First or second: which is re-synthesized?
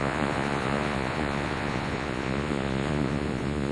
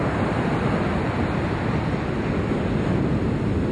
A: first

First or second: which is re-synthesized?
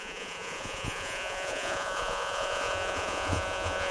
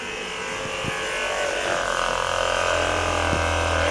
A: first